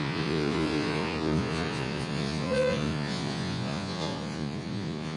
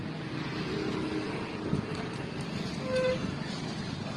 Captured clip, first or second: second